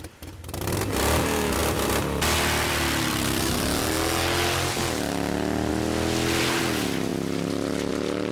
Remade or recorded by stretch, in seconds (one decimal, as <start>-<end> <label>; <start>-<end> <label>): 0.0-8.3 recorded